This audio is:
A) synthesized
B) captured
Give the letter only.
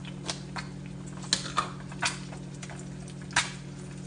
B